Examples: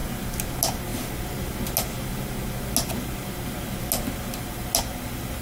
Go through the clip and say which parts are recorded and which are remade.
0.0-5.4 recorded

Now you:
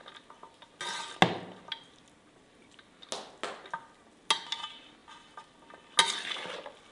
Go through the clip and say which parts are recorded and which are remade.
0.0-5.0 recorded; 5.0-5.9 remade; 5.9-6.9 recorded

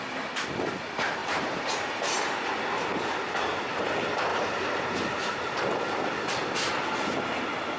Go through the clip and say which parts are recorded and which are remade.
0.0-1.2 recorded; 1.2-2.5 remade; 2.5-4.3 recorded; 4.3-5.7 remade; 5.7-7.8 recorded

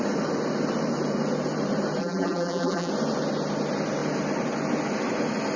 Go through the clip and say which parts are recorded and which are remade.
0.0-2.0 recorded; 2.0-2.9 remade; 2.9-5.6 recorded

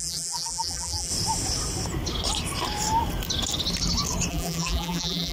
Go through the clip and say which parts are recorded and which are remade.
0.0-1.1 remade; 1.1-4.3 recorded; 4.3-5.3 remade

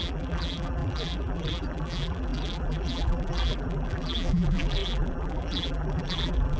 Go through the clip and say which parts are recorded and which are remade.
0.0-6.6 remade

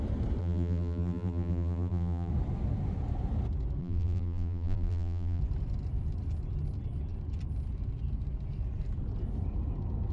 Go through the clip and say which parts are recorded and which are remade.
0.0-0.4 recorded; 0.4-2.3 remade; 2.3-3.8 recorded; 3.8-5.4 remade; 5.4-10.1 recorded

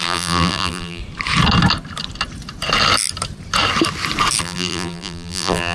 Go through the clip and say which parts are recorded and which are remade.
0.0-1.0 remade; 1.0-4.4 recorded; 4.4-5.7 remade